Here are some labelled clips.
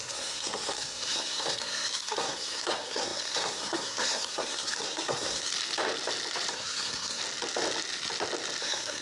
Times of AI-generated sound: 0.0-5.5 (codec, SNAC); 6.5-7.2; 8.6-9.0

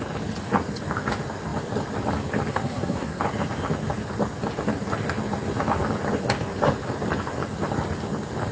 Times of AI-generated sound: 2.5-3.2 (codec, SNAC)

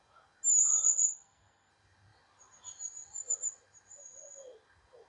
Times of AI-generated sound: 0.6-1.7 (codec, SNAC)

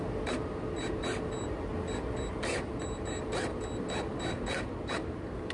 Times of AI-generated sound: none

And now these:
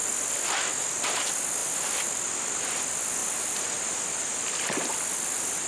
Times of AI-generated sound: none